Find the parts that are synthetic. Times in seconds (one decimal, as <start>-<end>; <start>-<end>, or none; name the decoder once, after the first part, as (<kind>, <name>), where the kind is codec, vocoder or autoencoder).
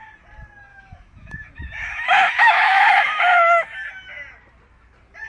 0.7-3.9 (autoencoder, DAC-VAE)